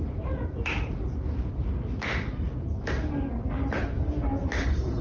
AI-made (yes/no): no